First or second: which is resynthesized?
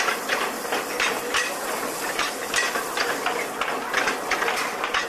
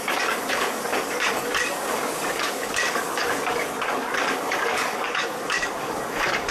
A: second